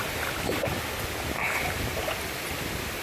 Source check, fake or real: real